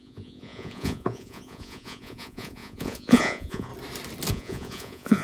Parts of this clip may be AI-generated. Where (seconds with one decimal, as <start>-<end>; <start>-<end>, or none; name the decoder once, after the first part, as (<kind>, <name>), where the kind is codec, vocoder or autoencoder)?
0.0-3.7 (vocoder, Vocos); 4.3-5.2